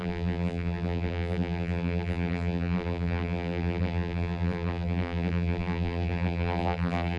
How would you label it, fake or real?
fake